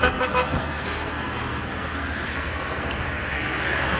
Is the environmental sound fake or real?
fake